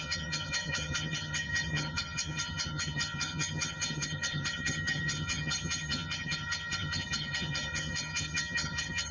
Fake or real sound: fake